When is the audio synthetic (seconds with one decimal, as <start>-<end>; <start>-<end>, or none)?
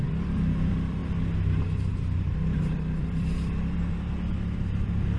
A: 0.0-1.0; 1.9-5.2